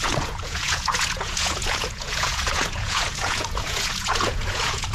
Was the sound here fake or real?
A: fake